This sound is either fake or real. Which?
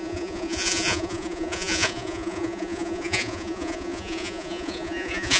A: fake